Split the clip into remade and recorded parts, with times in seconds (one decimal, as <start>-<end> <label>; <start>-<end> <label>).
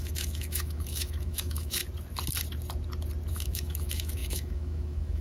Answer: 0.0-1.8 remade; 1.8-3.3 recorded; 3.3-5.2 remade